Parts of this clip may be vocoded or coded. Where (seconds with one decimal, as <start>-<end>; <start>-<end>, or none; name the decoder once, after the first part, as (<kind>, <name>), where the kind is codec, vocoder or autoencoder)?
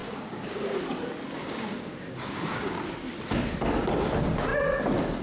0.0-0.8 (codec, DAC); 1.4-2.8